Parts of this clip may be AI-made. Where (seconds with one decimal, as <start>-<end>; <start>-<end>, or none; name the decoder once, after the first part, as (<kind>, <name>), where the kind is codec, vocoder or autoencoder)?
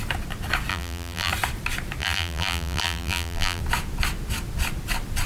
0.7-1.3 (vocoder, BigVGAN v2); 2.0-3.6